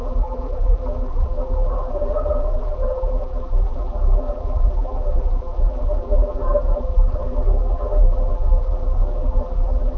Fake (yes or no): yes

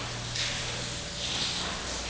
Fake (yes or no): no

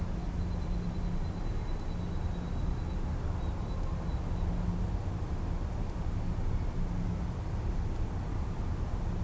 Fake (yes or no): no